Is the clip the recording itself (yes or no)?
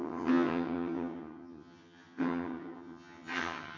no